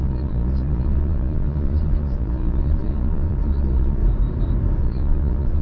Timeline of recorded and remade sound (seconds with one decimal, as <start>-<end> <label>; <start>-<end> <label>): 0.0-4.0 remade; 4.0-4.8 recorded; 4.8-5.6 remade

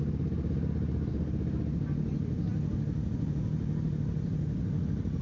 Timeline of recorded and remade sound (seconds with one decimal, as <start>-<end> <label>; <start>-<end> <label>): 0.0-5.2 recorded

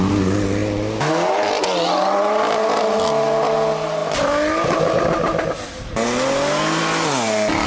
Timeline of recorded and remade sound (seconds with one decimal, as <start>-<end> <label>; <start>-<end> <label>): 0.0-7.7 recorded

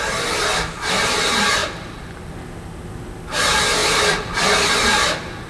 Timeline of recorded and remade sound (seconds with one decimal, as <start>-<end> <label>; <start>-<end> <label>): 0.0-1.6 recorded; 1.6-2.3 remade; 2.3-3.8 recorded; 3.8-4.7 remade; 4.7-5.5 recorded